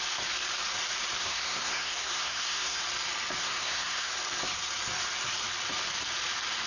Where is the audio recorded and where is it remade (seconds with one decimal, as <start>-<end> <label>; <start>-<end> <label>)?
0.0-1.2 recorded; 1.2-2.8 remade; 2.8-3.4 recorded; 3.4-4.1 remade; 4.1-6.7 recorded